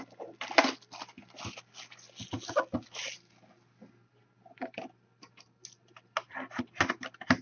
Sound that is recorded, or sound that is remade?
recorded